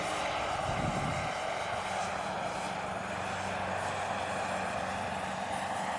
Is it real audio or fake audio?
real